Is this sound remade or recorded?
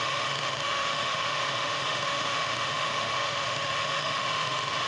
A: remade